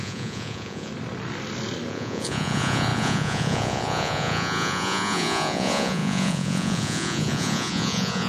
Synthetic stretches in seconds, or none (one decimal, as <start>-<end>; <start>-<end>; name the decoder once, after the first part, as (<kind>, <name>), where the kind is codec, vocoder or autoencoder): 0.0-0.9 (vocoder, Vocos); 1.9-8.3